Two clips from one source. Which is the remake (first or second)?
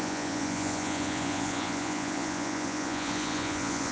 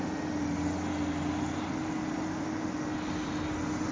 first